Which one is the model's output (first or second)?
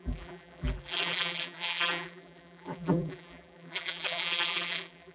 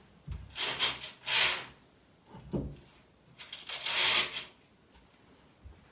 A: first